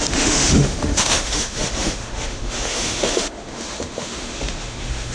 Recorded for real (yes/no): no